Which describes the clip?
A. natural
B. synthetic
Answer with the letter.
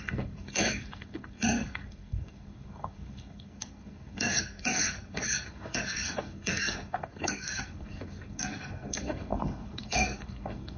B